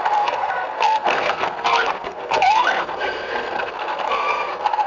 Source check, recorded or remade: remade